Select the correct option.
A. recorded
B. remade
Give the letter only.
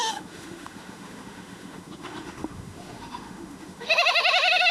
B